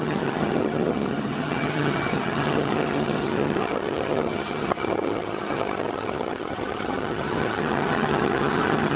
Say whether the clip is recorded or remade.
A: remade